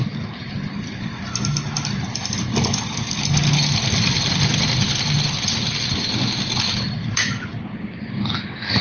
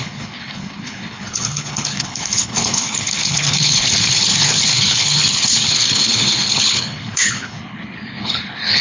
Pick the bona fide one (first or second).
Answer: first